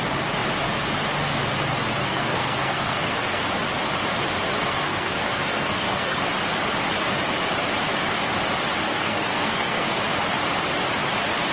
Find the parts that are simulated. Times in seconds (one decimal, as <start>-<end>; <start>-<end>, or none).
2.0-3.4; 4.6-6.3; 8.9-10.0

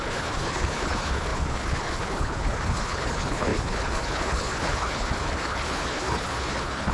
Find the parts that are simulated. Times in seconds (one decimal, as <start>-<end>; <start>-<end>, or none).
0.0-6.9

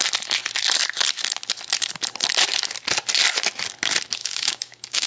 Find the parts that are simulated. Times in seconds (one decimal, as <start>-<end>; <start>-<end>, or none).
4.2-5.1

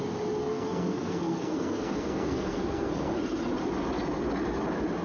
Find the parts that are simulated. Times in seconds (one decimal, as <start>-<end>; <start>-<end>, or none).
0.4-3.4

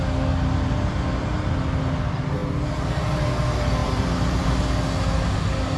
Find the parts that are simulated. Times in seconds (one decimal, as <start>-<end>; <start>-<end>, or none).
3.8-4.6